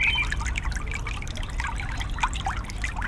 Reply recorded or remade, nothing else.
recorded